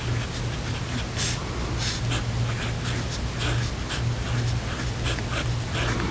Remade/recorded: recorded